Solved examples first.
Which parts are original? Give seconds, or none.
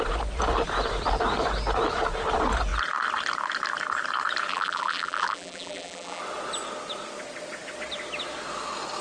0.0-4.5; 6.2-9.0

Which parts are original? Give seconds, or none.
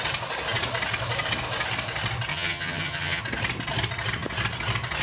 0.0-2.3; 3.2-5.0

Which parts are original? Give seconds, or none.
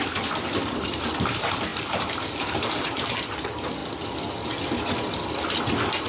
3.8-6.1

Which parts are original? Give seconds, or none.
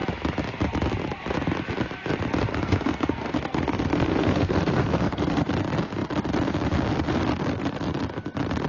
0.0-2.5; 5.5-8.7